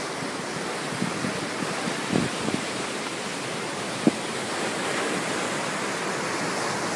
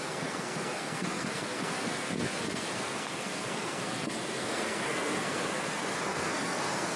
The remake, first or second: second